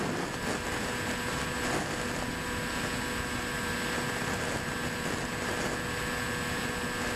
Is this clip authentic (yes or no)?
yes